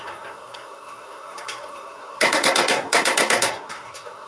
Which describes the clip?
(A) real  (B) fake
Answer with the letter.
B